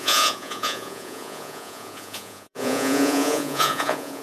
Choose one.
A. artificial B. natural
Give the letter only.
A